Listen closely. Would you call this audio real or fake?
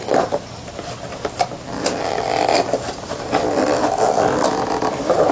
real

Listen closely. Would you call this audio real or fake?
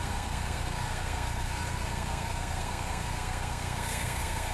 fake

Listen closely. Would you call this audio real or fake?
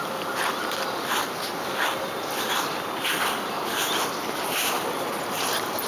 real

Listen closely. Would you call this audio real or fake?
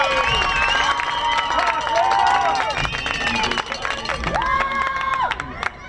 real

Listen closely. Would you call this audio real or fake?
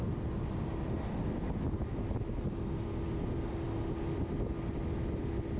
real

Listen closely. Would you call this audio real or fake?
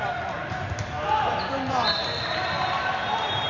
real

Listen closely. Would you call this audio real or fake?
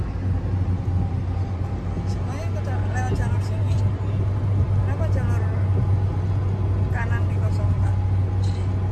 real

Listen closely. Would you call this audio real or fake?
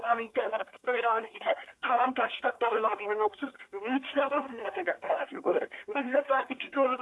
fake